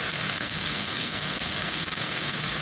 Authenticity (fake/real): fake